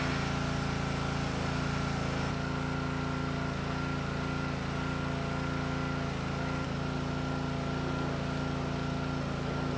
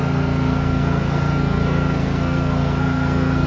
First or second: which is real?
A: first